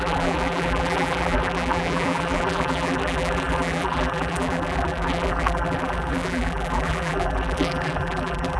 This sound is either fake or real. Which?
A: fake